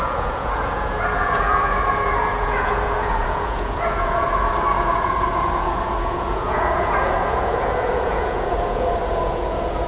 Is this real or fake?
fake